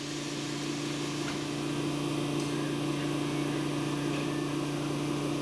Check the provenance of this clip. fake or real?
real